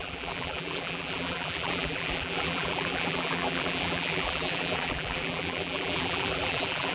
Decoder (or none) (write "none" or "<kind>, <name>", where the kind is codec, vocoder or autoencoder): vocoder, BigVGAN v2